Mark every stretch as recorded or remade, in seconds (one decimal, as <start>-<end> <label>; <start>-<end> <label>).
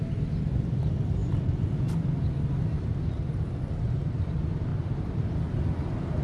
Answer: 0.0-6.2 recorded